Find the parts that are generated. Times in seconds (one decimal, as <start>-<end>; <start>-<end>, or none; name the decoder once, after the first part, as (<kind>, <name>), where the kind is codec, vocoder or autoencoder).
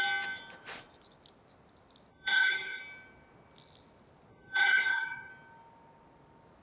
2.1-2.8 (codec, HILCodec); 4.3-5.3